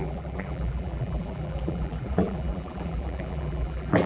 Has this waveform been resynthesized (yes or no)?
yes